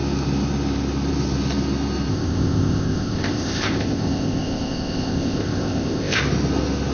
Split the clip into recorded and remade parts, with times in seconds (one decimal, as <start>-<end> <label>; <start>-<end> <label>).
0.0-2.1 recorded; 2.1-6.2 remade; 6.2-6.9 recorded